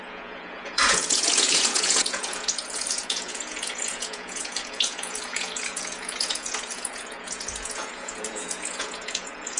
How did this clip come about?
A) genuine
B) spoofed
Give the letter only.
B